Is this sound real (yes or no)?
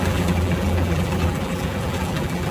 no